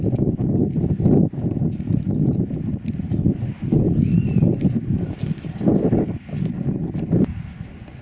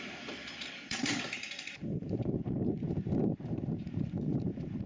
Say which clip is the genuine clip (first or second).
first